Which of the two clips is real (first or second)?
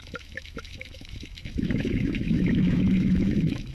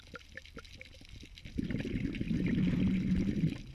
second